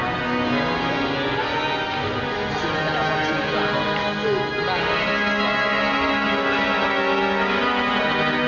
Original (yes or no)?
yes